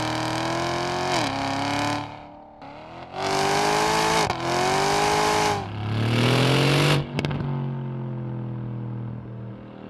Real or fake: real